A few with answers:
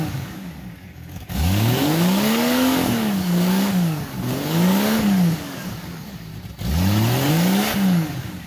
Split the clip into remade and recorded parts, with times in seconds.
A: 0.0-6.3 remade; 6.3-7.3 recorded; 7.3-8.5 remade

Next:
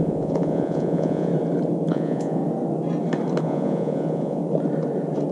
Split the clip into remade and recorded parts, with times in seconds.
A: 0.0-1.3 remade; 1.3-1.9 recorded; 1.9-2.4 remade; 2.4-3.4 recorded; 3.4-4.4 remade; 4.4-5.3 recorded

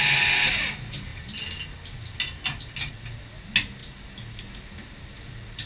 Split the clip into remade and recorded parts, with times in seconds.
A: 0.0-5.7 recorded